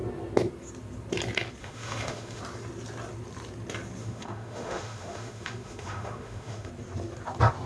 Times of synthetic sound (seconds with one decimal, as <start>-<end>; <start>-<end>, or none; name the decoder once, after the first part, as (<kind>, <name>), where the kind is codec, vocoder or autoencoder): 1.6-2.4 (autoencoder, DAC-VAE); 4.0-6.7